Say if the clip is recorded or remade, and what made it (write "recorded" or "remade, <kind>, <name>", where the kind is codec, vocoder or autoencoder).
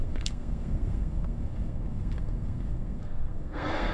remade, codec, SNAC